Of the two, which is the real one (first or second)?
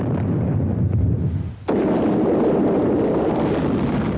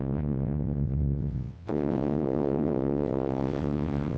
first